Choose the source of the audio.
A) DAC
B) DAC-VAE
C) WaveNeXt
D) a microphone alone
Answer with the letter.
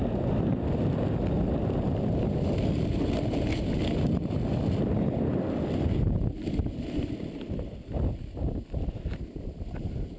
D